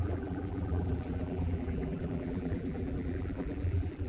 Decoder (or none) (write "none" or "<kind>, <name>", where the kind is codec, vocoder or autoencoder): vocoder, BigVGAN v2